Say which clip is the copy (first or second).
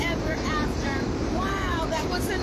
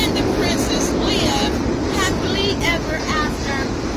first